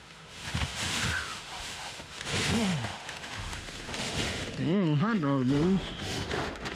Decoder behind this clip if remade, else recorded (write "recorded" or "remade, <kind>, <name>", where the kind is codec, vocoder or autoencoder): remade, autoencoder, DAC-VAE